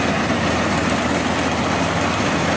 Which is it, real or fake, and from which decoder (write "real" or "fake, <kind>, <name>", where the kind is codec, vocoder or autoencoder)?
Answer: real